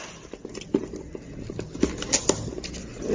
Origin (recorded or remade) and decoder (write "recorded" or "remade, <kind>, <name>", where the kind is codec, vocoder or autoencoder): recorded